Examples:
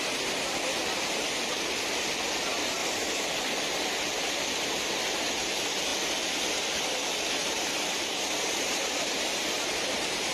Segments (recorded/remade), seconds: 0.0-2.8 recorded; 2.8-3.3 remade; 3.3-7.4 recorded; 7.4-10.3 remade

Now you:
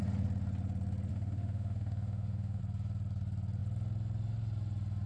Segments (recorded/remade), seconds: 0.0-1.1 recorded; 1.1-2.6 remade; 2.6-5.1 recorded

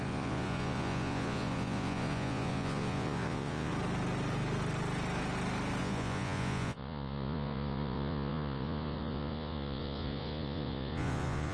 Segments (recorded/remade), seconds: 0.0-3.7 remade; 3.7-5.8 recorded; 5.8-11.5 remade

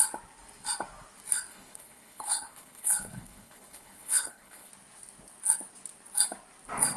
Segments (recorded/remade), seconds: 0.0-1.5 recorded; 1.5-4.7 remade; 4.7-7.0 recorded